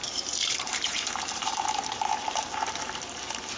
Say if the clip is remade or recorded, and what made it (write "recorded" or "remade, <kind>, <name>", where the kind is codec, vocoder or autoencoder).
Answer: remade, vocoder, BigVGAN v2